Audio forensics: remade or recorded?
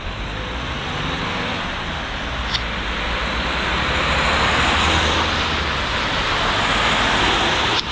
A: recorded